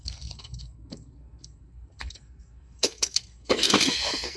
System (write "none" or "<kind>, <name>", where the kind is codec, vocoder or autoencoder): codec, SNAC